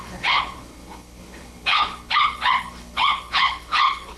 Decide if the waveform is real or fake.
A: fake